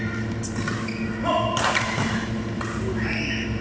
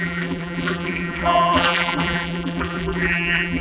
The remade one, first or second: second